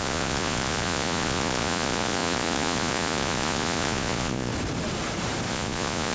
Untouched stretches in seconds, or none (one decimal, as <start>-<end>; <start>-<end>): 4.5-5.5